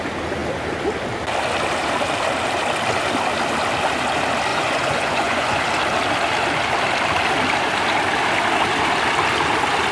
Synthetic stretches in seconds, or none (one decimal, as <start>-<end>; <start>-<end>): 4.5-5.6